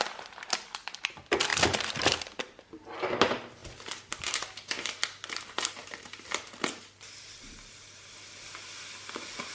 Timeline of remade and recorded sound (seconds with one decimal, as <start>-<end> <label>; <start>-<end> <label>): 0.0-1.5 recorded; 1.5-2.2 remade; 2.2-3.6 recorded; 3.6-8.8 remade; 8.8-9.5 recorded